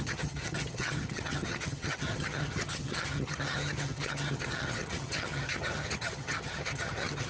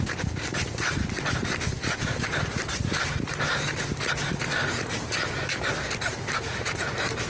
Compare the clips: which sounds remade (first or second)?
first